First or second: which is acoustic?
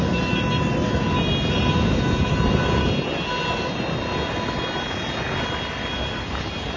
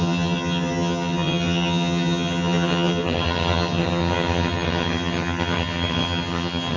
first